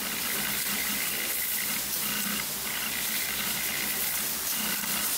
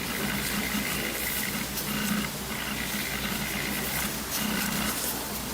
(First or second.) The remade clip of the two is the first